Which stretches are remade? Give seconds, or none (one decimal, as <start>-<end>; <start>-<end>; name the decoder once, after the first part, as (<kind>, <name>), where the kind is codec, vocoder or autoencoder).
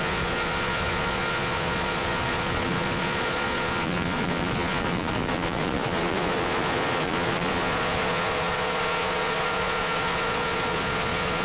0.0-11.4 (vocoder, Vocos)